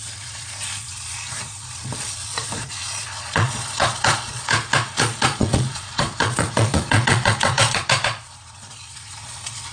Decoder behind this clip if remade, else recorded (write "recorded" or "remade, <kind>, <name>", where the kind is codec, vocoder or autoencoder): remade, vocoder, Vocos